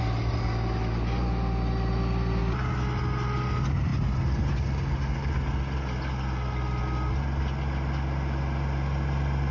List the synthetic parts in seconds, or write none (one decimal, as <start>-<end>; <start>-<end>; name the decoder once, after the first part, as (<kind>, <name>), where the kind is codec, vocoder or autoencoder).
none